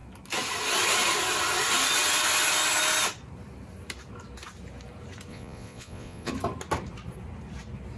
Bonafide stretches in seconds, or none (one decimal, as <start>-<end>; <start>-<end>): 0.0-5.3; 6.3-8.0